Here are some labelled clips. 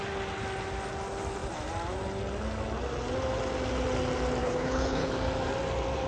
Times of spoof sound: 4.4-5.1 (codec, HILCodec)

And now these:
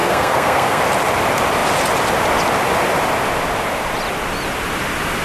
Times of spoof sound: 0.0-0.8 (codec, SNAC)